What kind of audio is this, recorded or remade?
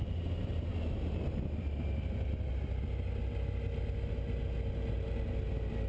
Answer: recorded